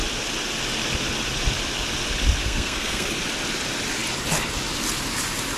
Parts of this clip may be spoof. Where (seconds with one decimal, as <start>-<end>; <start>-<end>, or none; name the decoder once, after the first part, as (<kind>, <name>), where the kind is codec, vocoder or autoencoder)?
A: 2.4-3.1 (codec, SNAC)